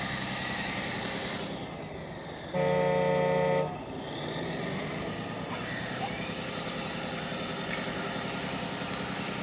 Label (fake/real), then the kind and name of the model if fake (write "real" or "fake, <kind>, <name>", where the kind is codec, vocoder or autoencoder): real